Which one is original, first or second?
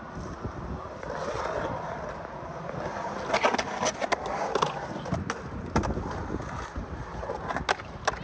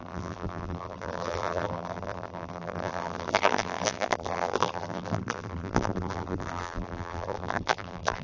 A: first